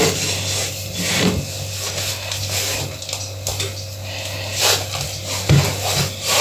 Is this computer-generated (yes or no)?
no